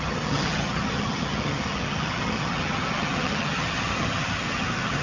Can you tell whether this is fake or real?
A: fake